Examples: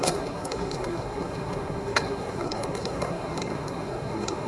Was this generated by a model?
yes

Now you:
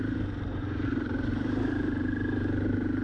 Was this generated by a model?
yes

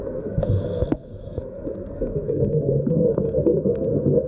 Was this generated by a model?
yes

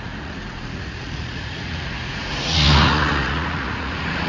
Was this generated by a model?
yes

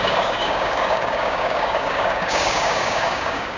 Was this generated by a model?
yes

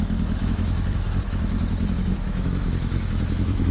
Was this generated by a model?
yes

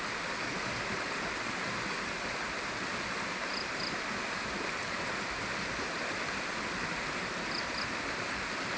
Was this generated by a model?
no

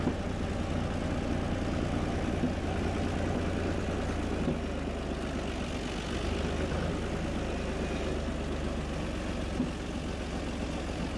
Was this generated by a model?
no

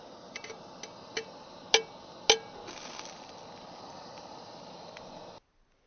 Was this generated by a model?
no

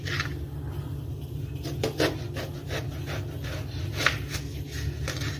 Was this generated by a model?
no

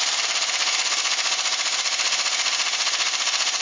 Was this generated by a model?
no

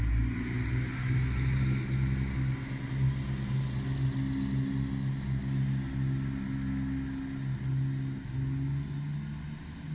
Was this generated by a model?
no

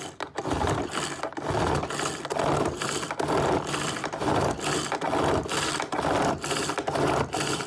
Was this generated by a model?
no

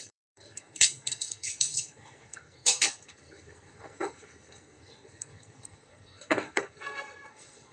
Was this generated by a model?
yes